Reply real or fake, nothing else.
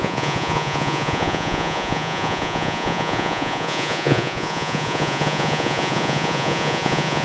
fake